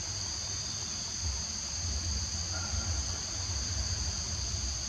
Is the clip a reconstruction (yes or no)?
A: no